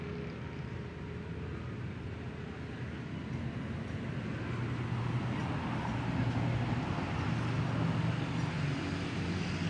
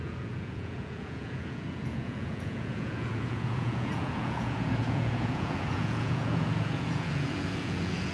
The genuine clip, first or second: first